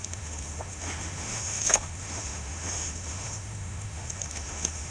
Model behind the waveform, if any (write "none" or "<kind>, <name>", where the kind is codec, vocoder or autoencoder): autoencoder, DAC-VAE